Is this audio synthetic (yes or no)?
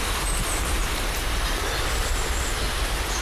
no